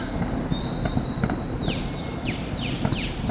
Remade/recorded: recorded